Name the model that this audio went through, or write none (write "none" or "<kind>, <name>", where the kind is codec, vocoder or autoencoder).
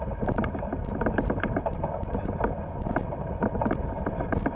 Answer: vocoder, BigVGAN v2